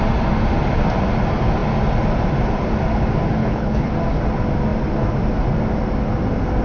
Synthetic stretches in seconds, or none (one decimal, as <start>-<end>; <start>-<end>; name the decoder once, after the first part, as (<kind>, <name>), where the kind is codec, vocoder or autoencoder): 3.4-3.9 (codec, HILCodec)